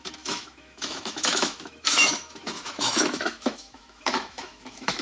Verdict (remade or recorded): remade